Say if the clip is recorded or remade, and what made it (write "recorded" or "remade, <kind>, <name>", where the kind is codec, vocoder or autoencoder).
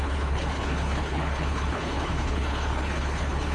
remade, codec, HILCodec